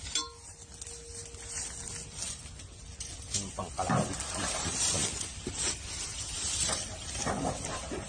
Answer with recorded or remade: recorded